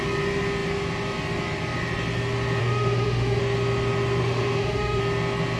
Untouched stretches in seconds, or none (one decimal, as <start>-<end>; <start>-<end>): 0.0-2.6; 3.4-4.2; 5.0-5.6